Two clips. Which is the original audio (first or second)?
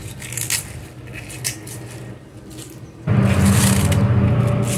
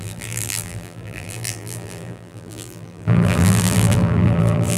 first